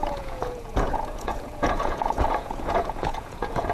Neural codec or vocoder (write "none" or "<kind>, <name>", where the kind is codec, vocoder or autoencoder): vocoder, Vocos